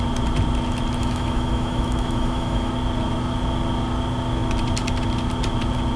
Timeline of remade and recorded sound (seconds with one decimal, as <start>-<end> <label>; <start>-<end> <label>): 0.0-1.0 recorded; 1.0-2.7 remade; 2.7-6.0 recorded